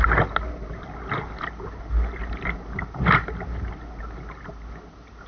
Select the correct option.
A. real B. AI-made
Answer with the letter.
A